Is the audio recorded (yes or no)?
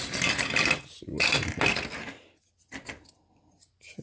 yes